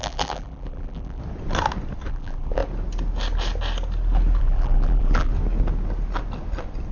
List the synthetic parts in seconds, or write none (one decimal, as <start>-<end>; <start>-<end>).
0.0-1.2; 2.1-2.6; 4.4-5.3